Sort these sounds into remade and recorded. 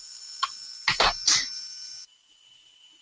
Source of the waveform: recorded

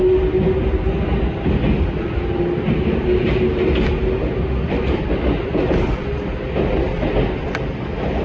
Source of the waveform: recorded